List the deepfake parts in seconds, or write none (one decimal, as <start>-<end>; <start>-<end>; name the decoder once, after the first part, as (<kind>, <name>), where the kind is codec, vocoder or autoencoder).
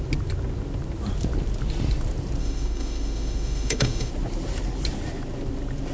2.4-4.1 (autoencoder, DAC-VAE)